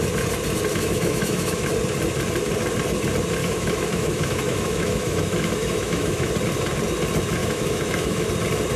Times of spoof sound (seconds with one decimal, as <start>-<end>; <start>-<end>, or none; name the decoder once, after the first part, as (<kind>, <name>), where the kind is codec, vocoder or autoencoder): 0.7-1.7 (autoencoder, DAC-VAE); 3.4-6.3; 7.4-8.3